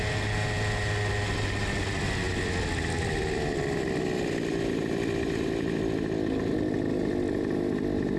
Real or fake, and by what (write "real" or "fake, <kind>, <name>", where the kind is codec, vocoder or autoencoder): real